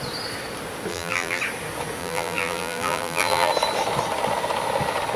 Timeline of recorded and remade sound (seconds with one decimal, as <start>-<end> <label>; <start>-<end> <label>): 0.0-0.9 recorded; 0.9-1.4 remade; 1.4-2.0 recorded; 2.0-3.5 remade; 3.5-5.2 recorded